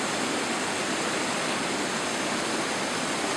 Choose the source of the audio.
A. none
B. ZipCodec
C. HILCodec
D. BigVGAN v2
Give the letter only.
A